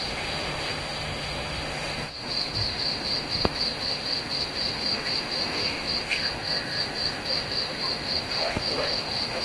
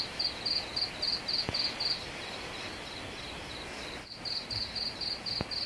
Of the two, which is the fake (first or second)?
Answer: first